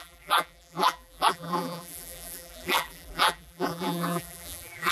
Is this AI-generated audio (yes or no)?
yes